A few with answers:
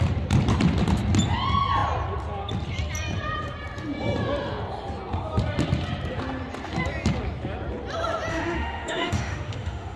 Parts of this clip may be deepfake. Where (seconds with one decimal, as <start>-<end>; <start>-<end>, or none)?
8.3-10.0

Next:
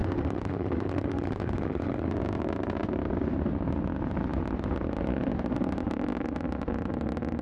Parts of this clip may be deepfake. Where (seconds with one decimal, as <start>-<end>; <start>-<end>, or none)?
0.0-2.1

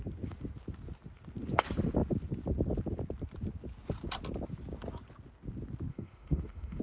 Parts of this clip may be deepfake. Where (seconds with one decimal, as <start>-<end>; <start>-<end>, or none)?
5.9-6.8